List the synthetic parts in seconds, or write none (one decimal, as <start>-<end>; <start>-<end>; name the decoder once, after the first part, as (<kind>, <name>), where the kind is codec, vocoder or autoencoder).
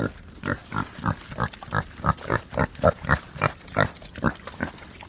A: none